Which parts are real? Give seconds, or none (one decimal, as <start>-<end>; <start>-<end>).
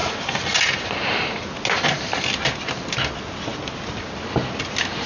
0.0-5.1